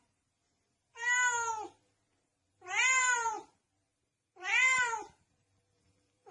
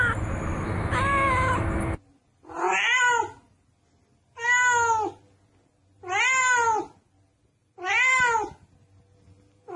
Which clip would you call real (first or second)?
second